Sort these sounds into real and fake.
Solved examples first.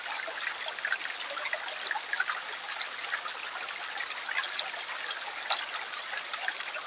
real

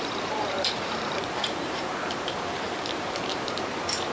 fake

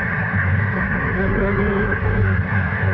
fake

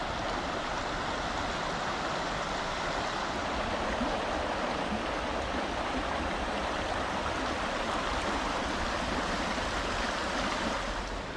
real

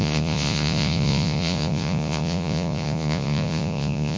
fake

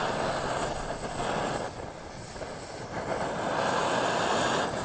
real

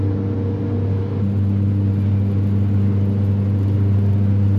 real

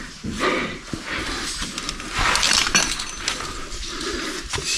real